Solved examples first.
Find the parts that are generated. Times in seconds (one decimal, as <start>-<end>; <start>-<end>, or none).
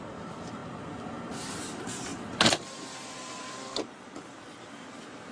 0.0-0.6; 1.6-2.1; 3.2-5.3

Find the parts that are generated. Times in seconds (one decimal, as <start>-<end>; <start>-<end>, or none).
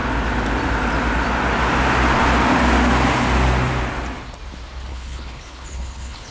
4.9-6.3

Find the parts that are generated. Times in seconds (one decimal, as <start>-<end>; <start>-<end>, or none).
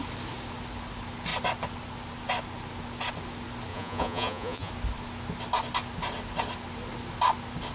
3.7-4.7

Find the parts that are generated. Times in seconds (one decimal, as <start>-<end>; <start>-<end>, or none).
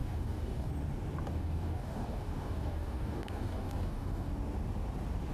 0.0-0.7; 1.3-4.3